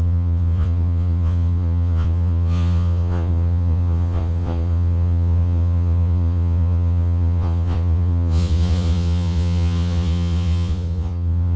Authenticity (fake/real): fake